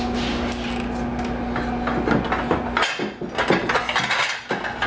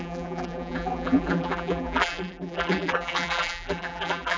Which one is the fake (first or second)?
second